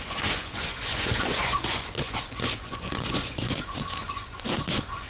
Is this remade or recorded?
remade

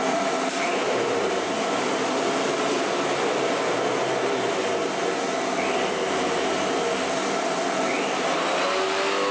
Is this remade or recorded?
recorded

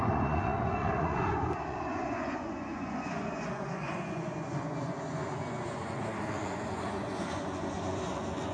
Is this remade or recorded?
remade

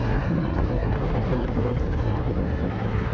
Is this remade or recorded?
remade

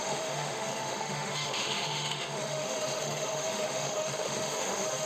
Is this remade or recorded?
remade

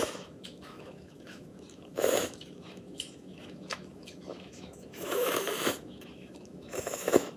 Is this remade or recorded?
remade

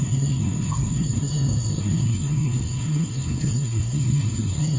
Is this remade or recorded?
remade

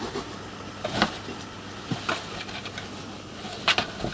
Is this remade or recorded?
recorded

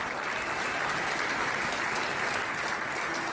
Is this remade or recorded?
recorded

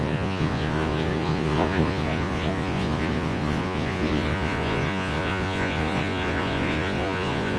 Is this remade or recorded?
remade